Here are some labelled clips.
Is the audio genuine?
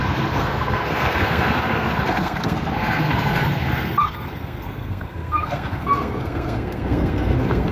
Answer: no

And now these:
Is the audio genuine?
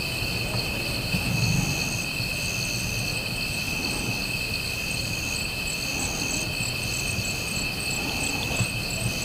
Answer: yes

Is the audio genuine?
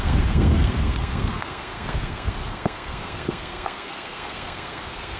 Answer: no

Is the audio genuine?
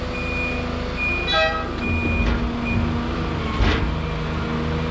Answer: yes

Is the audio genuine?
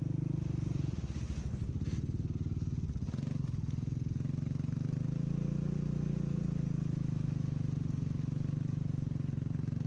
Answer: yes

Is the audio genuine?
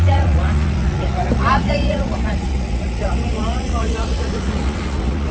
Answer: no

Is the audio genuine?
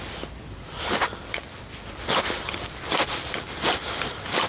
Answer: yes